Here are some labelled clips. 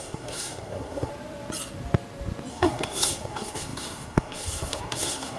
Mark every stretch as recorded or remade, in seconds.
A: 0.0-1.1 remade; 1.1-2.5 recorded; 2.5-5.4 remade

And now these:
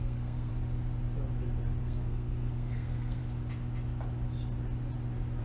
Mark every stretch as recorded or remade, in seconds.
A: 0.0-0.5 remade; 0.5-1.8 recorded; 1.8-3.2 remade; 3.2-5.4 recorded

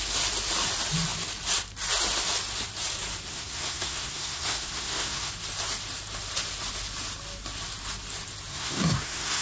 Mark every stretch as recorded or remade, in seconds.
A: 0.0-3.3 recorded; 3.3-5.3 remade; 5.3-8.5 recorded; 8.5-9.4 remade

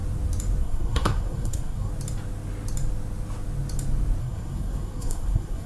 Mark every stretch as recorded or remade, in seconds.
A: 0.0-0.6 recorded; 0.6-1.9 remade; 1.9-4.2 recorded; 4.2-5.7 remade

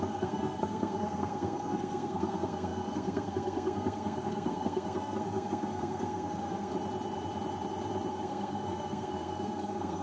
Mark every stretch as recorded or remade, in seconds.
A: 0.0-6.7 remade; 6.7-8.1 recorded; 8.1-10.0 remade

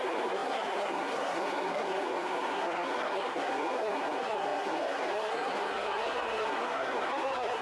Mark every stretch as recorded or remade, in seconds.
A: 0.0-7.6 remade

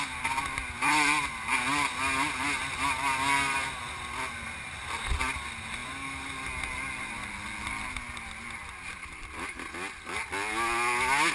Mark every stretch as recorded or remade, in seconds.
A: 0.0-11.3 recorded